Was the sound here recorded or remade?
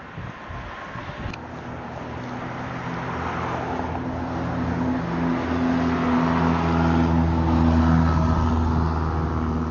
recorded